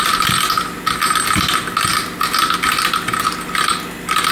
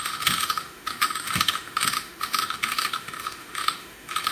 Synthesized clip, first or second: second